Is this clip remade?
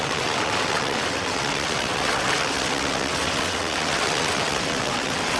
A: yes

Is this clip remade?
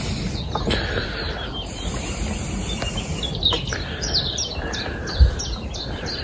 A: no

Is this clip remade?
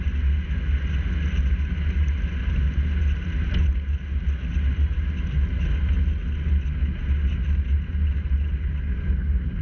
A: no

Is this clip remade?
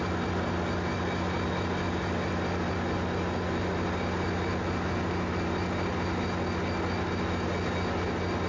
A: no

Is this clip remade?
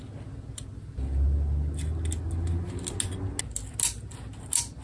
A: no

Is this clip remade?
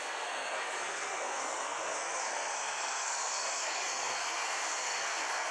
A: yes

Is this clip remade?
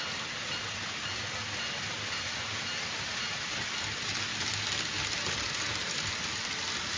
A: no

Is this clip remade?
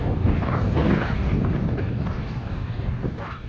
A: yes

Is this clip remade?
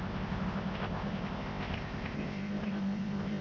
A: yes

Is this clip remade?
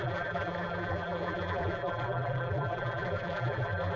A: yes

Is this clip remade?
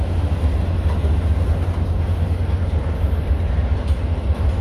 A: no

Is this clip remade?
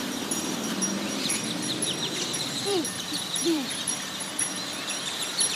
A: yes